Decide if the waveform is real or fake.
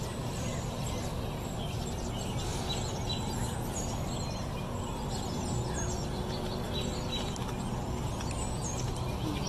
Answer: real